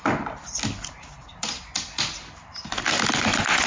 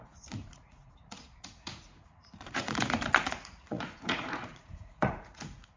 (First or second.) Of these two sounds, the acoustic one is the first